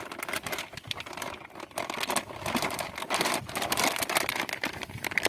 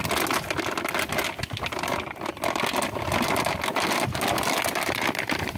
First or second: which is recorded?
second